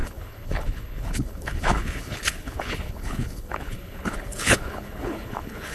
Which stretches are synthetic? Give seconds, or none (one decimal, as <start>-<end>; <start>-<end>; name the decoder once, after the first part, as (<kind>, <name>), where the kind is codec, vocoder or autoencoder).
0.0-5.7 (codec, HILCodec)